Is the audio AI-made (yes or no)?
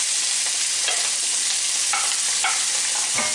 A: no